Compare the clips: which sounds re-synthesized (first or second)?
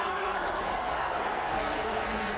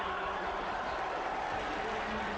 first